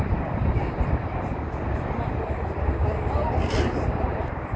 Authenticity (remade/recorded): recorded